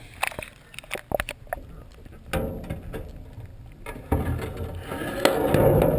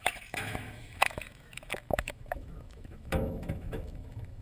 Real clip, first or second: first